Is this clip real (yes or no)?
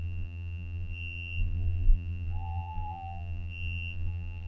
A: no